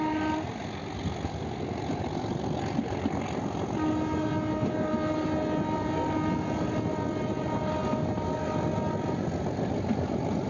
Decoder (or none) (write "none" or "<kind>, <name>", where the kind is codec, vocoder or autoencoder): none